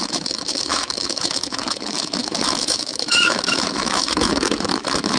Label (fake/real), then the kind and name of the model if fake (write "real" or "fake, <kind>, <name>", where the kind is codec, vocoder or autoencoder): fake, autoencoder, DAC-VAE